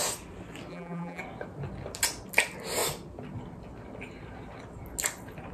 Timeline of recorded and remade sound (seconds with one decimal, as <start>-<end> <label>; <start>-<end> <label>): 0.0-0.7 recorded; 0.7-1.2 remade; 1.2-5.5 recorded